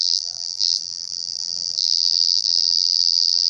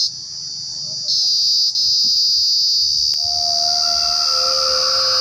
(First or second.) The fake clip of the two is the first